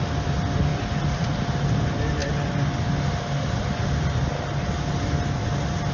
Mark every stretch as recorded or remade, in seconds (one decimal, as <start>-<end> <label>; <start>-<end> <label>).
0.0-0.7 recorded; 0.7-1.8 remade; 1.8-5.9 recorded

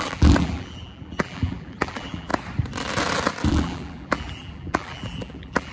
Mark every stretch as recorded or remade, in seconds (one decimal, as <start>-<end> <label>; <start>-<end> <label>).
0.0-2.3 remade; 2.3-3.5 recorded; 3.5-5.7 remade

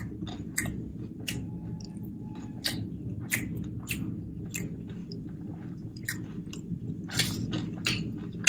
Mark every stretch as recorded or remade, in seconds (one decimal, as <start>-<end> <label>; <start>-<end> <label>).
0.0-0.9 recorded; 0.9-3.2 remade; 3.2-5.0 recorded; 5.0-7.0 remade; 7.0-8.5 recorded

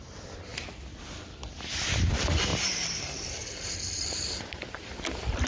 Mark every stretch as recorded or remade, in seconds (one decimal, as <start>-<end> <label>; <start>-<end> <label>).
0.0-2.5 recorded; 2.5-4.9 remade; 4.9-5.5 recorded

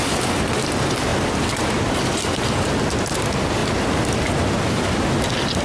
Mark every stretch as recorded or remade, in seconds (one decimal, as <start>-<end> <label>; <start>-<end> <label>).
0.0-2.1 recorded; 2.1-3.2 remade; 3.2-5.6 recorded

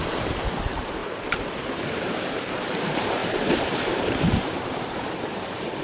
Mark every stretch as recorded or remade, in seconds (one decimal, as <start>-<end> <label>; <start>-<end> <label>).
0.0-5.8 remade

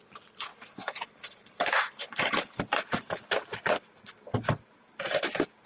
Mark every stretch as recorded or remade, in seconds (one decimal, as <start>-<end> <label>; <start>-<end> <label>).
0.0-0.5 remade; 0.5-1.1 recorded; 1.1-3.2 remade; 3.2-5.7 recorded

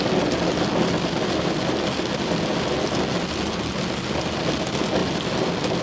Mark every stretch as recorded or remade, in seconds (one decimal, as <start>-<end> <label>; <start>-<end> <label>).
0.0-5.8 recorded